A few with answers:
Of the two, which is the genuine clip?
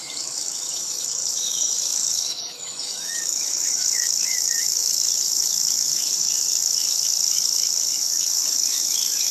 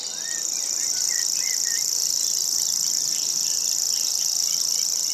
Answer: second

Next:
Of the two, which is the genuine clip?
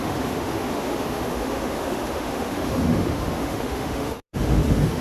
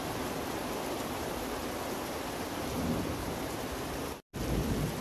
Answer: second